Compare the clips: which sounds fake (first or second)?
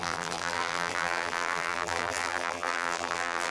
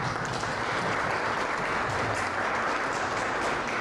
first